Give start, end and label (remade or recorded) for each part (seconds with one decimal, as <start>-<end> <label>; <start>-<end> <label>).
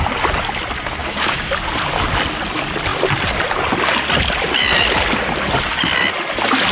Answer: 0.0-1.0 recorded; 1.0-1.5 remade; 1.5-6.7 recorded